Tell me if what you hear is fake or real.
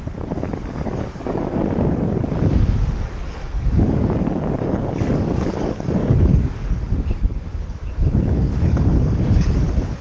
fake